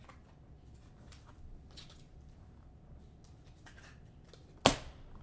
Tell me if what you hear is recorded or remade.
recorded